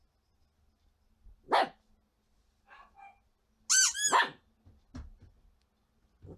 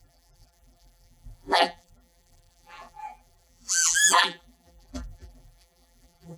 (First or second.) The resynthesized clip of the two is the second